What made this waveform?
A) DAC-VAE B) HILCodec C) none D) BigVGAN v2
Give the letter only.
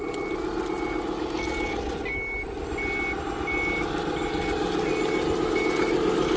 C